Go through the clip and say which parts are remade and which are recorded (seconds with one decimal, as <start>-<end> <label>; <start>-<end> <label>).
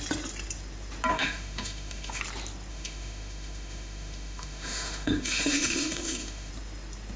0.0-1.1 recorded; 1.1-2.2 remade; 2.2-2.7 recorded; 2.7-6.5 remade; 6.5-7.2 recorded